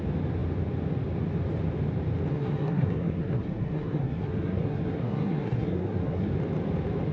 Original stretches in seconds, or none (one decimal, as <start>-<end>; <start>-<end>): 0.0-2.3; 6.3-7.1